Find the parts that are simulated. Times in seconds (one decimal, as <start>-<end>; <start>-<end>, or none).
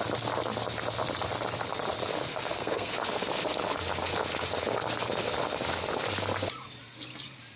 2.3-2.9